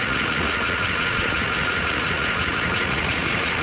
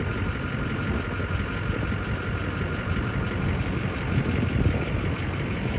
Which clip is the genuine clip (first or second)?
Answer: second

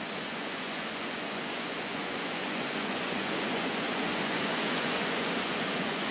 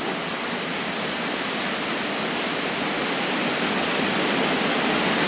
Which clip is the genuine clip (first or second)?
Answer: second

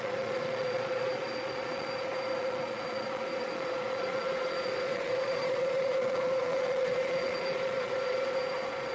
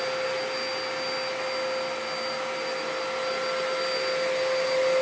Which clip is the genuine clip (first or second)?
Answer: second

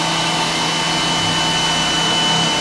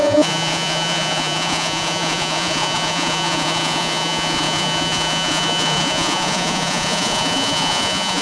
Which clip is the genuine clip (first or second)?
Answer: first